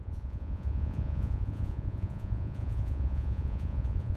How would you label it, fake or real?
fake